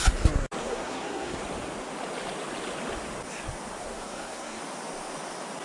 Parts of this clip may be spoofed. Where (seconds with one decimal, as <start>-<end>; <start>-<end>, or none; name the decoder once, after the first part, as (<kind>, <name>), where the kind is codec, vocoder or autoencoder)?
0.6-1.4 (codec, SNAC); 3.8-4.6